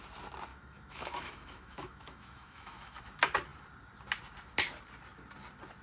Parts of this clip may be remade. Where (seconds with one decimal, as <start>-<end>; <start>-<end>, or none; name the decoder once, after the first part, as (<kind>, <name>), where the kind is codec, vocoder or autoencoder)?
0.5-3.0 (autoencoder, DAC-VAE)